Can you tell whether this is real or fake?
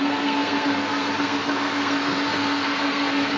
fake